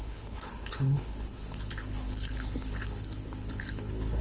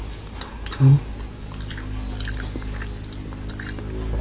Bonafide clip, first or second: second